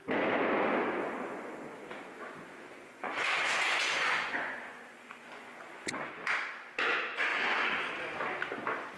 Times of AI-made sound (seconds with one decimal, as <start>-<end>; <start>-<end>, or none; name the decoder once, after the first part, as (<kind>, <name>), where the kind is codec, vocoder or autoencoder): 1.0-6.1 (vocoder, Vocos); 7.3-7.9